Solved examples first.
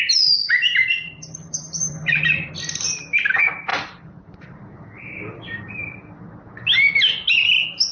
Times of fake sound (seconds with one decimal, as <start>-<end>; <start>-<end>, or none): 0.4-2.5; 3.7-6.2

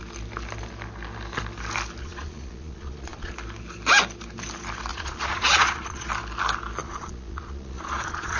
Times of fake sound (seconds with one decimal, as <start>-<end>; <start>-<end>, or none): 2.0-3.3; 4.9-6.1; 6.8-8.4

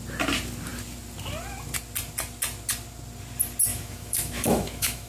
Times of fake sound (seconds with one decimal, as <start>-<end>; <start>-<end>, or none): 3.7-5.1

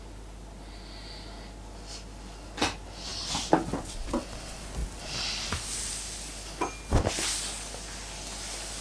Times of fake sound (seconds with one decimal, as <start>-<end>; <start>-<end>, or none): none